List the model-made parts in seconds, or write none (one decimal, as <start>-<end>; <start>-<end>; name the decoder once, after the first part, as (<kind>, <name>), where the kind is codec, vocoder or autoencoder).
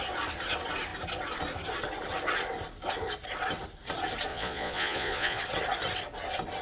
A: 4.3-5.4 (vocoder, Vocos)